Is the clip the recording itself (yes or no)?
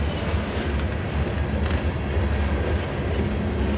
yes